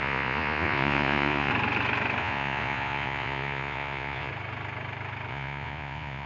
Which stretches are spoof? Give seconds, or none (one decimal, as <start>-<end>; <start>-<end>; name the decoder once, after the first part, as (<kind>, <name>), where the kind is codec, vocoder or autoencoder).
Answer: 0.0-1.5 (vocoder, Vocos); 2.2-4.3; 5.3-6.3

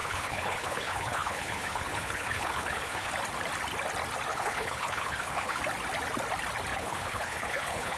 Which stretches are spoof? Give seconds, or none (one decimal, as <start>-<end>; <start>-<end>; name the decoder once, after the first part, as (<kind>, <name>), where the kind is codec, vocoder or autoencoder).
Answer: 0.0-3.1 (codec, HILCodec); 4.3-5.6; 6.7-8.0

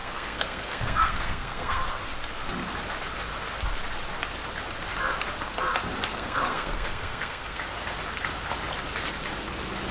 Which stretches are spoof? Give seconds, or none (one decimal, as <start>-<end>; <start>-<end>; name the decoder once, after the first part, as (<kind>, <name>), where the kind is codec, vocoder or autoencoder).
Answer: 0.0-2.0 (codec, SNAC); 6.1-7.6